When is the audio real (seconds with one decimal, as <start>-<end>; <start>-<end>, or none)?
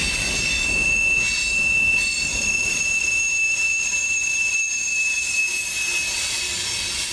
0.0-2.3; 5.4-7.1